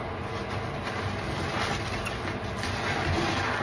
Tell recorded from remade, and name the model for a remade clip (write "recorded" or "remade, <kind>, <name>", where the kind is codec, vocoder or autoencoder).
recorded